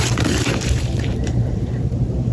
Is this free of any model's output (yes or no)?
no